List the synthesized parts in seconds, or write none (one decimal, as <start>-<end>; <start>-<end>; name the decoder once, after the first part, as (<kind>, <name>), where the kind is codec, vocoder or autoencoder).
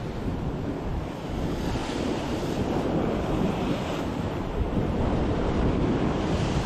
1.8-5.8 (vocoder, BigVGAN v2)